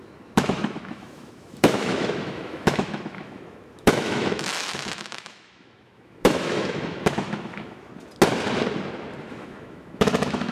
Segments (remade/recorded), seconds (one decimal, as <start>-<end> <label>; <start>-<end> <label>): 0.0-7.9 remade; 7.9-9.3 recorded; 9.3-10.5 remade